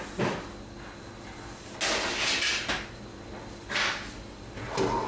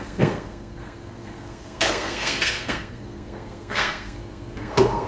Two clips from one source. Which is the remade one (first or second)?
second